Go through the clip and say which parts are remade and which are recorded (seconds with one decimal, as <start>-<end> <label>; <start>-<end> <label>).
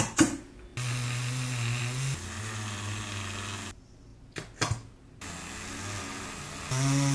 0.0-7.1 recorded